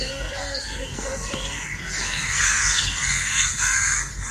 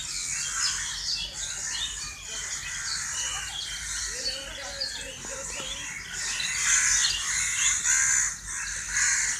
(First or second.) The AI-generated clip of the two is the first